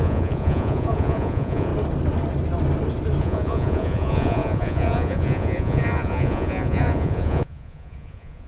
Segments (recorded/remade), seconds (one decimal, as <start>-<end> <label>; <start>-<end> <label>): 0.0-1.7 remade; 1.7-3.2 recorded; 3.2-8.5 remade